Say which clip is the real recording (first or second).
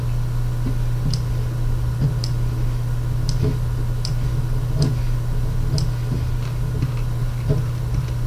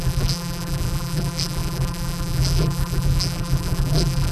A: first